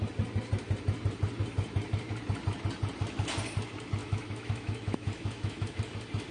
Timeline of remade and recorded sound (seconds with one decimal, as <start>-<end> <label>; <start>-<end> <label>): 0.0-4.0 recorded; 4.0-5.8 remade; 5.8-6.3 recorded